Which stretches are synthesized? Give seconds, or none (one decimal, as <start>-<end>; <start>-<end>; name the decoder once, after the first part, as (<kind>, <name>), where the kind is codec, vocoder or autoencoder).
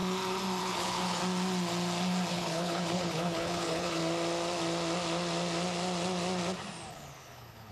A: 0.6-1.2 (codec, HILCodec); 2.3-4.0; 6.9-7.7